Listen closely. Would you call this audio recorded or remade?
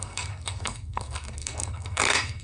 remade